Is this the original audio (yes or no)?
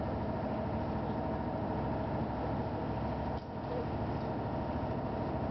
yes